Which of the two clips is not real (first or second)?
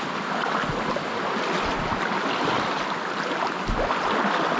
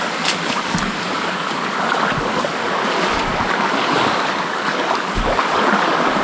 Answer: second